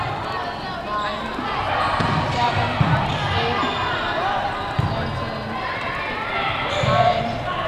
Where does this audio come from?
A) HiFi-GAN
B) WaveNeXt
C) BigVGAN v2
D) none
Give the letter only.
D